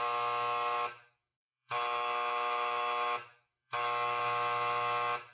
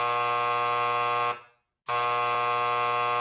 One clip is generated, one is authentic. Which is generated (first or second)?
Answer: first